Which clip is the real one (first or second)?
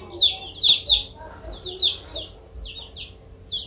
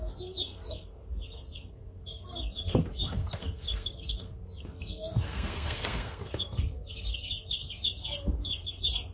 first